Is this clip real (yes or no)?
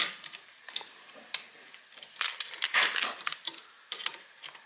yes